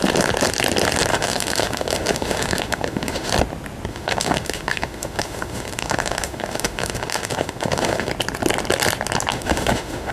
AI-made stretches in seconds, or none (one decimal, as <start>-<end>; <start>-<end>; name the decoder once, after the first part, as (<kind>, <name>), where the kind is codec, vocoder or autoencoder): 1.1-3.3 (autoencoder, DAC-VAE); 3.9-8.1; 9.3-10.1